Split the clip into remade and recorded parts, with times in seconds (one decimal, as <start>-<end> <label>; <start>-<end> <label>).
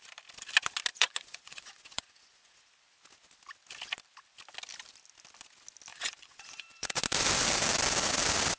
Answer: 0.0-0.9 recorded; 0.9-2.7 remade; 2.7-5.9 recorded; 5.9-7.0 remade; 7.0-8.6 recorded